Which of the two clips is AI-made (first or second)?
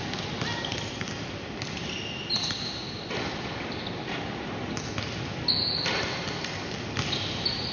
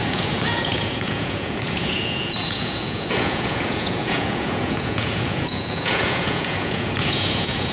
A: second